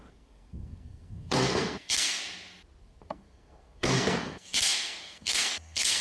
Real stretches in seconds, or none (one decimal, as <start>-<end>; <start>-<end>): 2.2-2.8